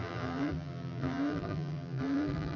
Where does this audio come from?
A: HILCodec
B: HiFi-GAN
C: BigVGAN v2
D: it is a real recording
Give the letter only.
C